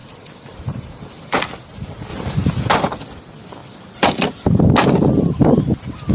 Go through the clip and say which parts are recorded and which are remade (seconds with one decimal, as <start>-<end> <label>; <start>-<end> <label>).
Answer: 0.0-1.4 remade; 1.4-2.1 recorded; 2.1-2.7 remade; 2.7-6.1 recorded